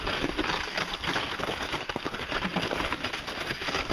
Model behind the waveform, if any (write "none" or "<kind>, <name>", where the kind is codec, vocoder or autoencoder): none